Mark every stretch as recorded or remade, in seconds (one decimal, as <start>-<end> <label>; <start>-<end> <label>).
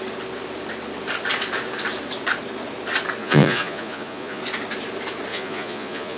0.0-3.2 recorded; 3.2-4.4 remade; 4.4-5.3 recorded; 5.3-6.2 remade